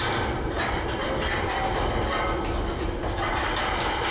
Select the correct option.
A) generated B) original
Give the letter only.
B